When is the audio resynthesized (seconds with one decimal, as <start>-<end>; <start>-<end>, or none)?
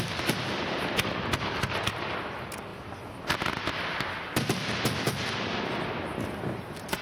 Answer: none